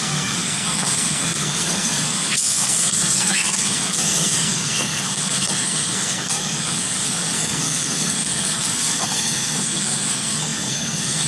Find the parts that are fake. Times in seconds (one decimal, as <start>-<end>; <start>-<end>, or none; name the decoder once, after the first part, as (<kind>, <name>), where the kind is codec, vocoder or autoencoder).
0.0-11.3 (codec, SNAC)